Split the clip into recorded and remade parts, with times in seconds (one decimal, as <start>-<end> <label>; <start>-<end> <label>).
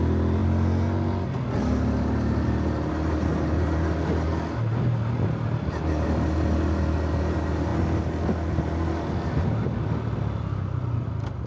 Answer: 0.0-11.5 recorded